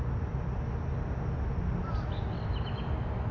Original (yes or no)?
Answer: yes